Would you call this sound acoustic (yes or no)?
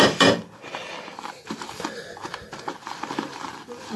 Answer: no